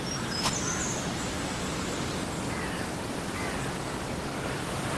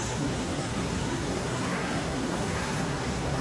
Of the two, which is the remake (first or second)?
second